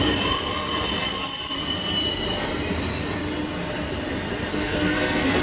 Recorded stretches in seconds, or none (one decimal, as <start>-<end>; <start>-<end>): 0.0-4.5